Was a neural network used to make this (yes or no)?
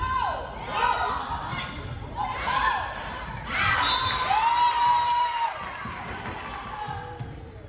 yes